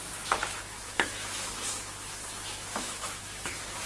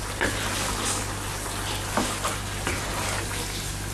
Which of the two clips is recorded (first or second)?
second